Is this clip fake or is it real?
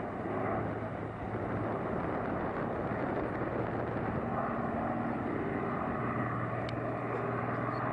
real